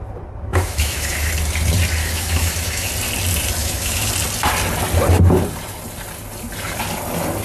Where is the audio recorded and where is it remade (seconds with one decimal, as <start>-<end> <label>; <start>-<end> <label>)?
0.0-0.5 recorded; 0.5-1.3 remade; 1.3-2.0 recorded; 2.0-2.9 remade; 2.9-3.6 recorded; 3.6-4.1 remade; 4.1-7.4 recorded